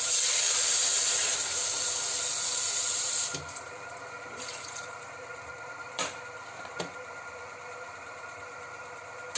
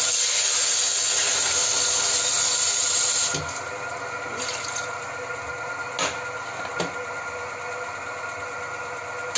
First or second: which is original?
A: second